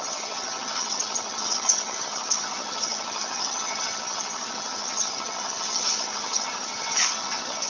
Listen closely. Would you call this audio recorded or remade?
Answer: remade